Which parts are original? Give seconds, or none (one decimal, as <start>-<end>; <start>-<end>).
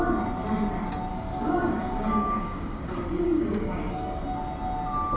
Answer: 0.0-1.1; 4.2-5.2